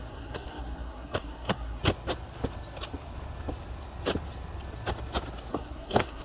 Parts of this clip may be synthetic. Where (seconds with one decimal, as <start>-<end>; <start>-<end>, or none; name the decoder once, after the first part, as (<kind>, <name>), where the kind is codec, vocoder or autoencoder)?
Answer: 0.0-1.8 (codec, SNAC); 5.5-6.2